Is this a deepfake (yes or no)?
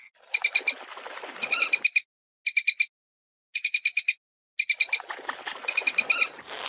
no